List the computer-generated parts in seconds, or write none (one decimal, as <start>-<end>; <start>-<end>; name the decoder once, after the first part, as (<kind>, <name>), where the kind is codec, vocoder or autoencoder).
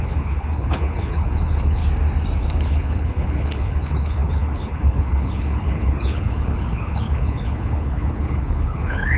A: 0.0-1.8 (codec, HILCodec); 2.4-9.2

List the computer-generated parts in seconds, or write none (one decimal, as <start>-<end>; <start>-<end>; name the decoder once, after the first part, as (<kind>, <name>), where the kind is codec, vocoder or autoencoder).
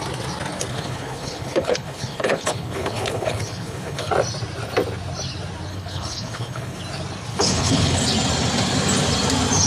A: 0.7-4.1 (codec, HILCodec); 5.7-6.8; 7.3-8.0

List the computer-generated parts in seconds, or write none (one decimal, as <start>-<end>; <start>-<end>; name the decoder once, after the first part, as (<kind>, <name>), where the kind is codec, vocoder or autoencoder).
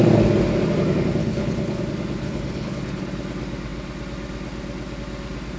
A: 1.2-1.8 (codec, HILCodec); 2.2-3.0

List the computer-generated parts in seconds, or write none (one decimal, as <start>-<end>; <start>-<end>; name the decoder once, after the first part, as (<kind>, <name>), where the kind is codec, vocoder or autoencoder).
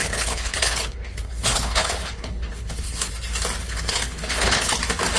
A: 0.0-3.1 (codec, HILCodec); 3.6-4.8